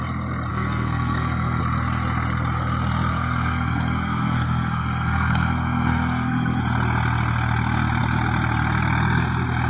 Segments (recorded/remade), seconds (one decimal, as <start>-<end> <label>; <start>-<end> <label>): 0.0-0.5 recorded; 0.5-1.6 remade; 1.6-3.1 recorded; 3.1-6.6 remade; 6.6-9.7 recorded